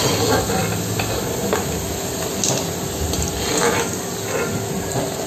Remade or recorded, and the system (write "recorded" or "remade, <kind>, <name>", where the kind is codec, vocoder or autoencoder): recorded